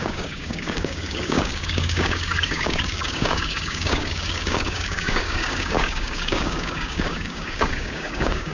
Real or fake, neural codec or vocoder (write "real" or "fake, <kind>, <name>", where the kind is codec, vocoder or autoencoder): fake, codec, DAC